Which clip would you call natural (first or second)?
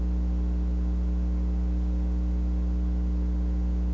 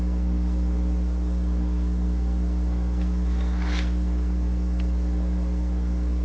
first